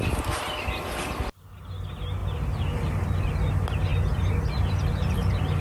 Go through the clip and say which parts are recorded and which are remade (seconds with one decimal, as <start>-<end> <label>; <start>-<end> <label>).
0.0-5.6 recorded